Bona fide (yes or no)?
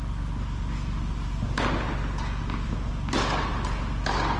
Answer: yes